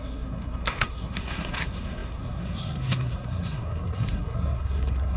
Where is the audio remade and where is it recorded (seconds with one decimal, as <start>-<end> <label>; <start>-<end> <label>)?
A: 0.0-5.2 remade